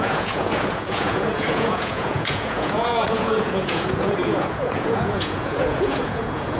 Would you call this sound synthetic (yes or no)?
yes